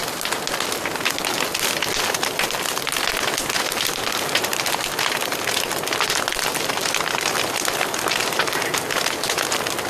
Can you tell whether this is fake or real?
real